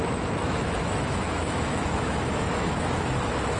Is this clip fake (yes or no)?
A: yes